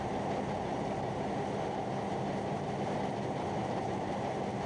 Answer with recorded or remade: recorded